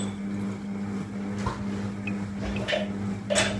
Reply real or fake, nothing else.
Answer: real